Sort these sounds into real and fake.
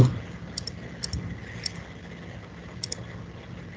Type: real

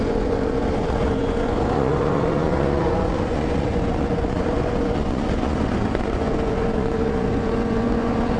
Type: fake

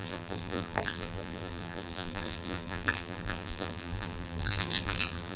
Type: fake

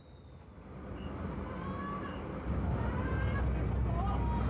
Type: real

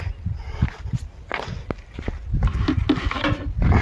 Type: real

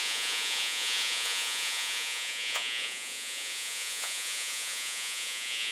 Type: fake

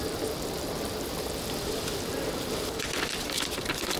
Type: fake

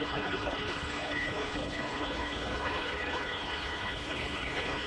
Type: fake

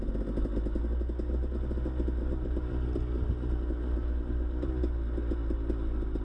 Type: real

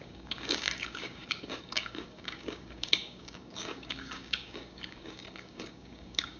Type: fake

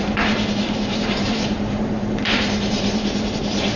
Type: fake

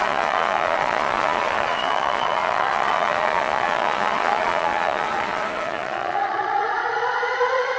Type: fake